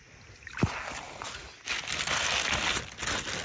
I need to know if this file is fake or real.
real